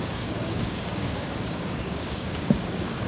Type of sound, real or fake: fake